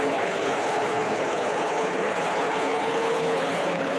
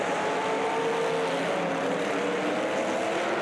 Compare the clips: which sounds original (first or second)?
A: second